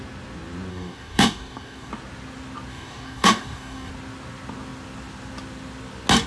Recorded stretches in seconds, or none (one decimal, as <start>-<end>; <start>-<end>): 0.0-0.7; 1.9-2.7; 3.9-6.3